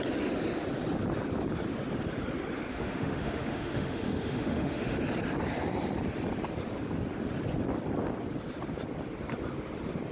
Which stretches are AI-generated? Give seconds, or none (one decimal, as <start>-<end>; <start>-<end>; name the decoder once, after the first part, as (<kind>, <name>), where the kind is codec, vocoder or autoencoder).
2.7-5.0 (autoencoder, DAC-VAE)